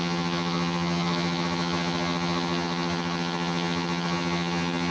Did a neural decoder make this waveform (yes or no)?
yes